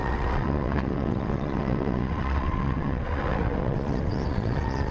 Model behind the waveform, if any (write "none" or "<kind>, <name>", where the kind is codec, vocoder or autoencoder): vocoder, WaveNeXt